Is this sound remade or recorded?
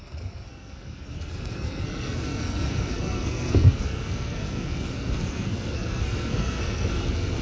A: remade